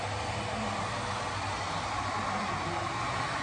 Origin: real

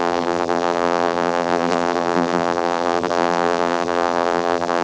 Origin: fake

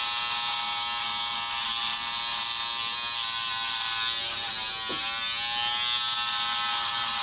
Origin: real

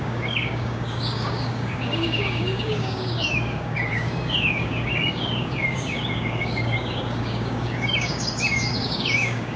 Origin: fake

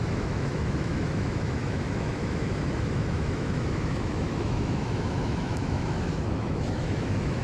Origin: fake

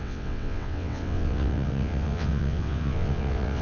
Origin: fake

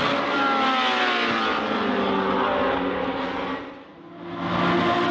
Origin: real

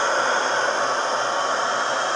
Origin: real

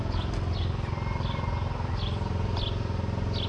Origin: real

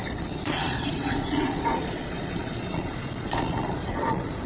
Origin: fake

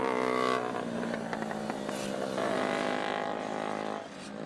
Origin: real